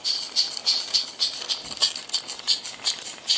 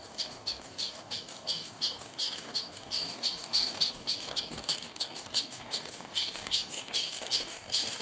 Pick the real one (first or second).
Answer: first